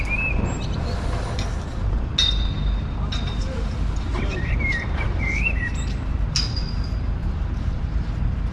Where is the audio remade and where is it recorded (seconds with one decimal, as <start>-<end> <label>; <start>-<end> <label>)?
0.0-1.5 recorded; 1.5-2.1 remade; 2.1-4.1 recorded; 4.1-5.7 remade; 5.7-7.2 recorded; 7.2-8.1 remade; 8.1-8.5 recorded